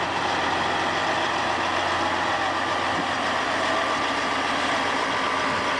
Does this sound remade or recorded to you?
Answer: recorded